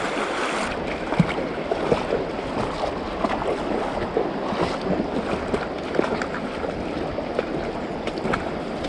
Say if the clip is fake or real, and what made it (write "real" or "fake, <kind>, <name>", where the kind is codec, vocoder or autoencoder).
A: real